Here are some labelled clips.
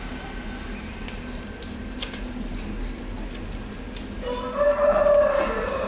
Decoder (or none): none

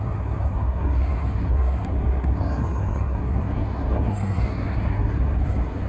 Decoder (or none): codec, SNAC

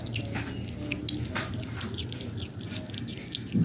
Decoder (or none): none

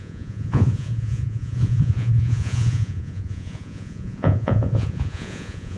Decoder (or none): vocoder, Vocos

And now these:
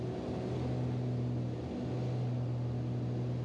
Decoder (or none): none